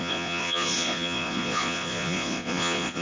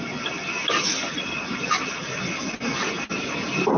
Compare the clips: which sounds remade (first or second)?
first